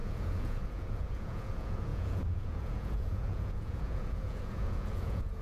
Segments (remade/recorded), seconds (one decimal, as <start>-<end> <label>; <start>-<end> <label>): 0.0-5.4 remade